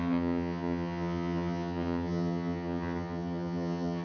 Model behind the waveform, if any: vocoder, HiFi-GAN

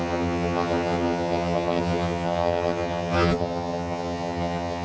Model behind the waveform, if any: vocoder, HiFi-GAN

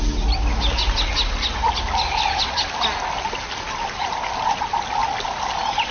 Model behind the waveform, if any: none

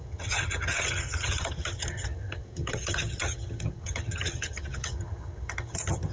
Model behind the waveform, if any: vocoder, HiFi-GAN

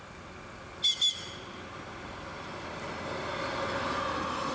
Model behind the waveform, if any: none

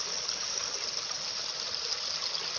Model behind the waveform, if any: none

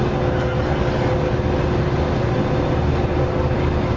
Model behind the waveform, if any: none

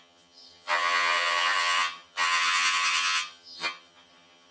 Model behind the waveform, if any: vocoder, HiFi-GAN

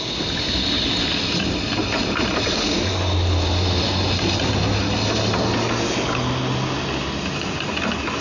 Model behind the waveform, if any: none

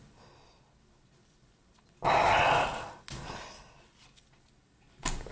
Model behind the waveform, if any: none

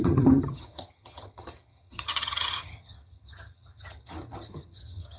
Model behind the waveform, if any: vocoder, HiFi-GAN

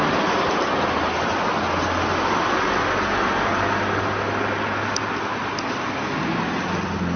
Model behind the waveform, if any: none